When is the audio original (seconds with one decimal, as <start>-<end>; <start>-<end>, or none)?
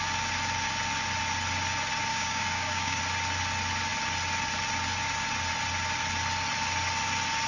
0.0-2.1; 3.0-7.5